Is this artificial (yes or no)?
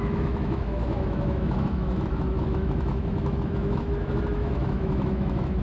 yes